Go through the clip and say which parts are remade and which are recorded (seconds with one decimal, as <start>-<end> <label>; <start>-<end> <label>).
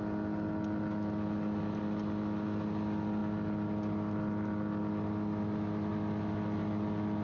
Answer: 0.0-7.2 recorded